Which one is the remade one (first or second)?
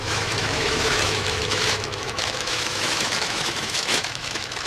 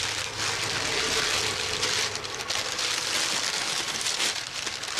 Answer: first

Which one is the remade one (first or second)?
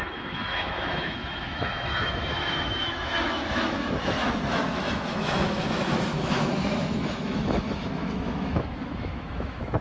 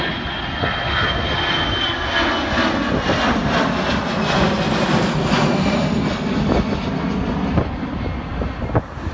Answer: first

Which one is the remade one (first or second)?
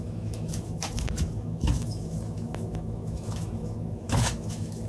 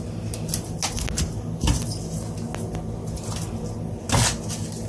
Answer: first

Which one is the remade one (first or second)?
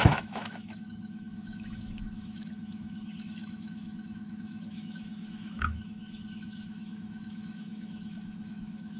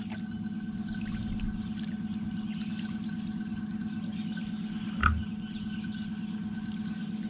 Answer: first